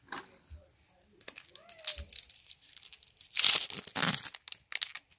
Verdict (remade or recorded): recorded